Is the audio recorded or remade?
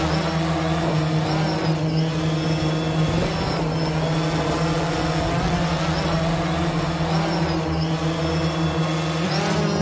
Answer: recorded